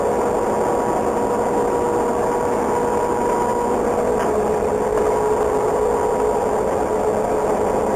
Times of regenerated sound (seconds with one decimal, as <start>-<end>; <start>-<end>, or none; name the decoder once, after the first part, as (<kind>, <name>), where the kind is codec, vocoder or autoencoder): none